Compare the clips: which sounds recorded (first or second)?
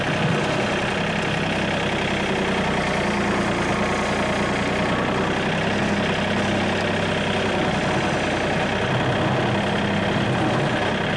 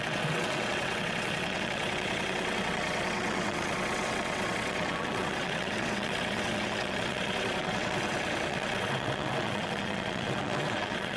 first